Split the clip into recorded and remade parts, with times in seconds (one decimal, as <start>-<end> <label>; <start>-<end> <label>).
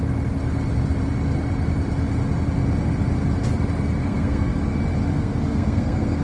0.0-4.0 recorded; 4.0-4.5 remade; 4.5-5.1 recorded; 5.1-6.2 remade